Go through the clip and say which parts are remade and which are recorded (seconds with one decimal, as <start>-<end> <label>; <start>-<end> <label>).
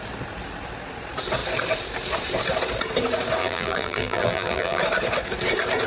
0.0-3.4 recorded; 3.4-4.8 remade; 4.8-5.9 recorded